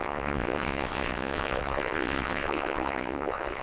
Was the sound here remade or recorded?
remade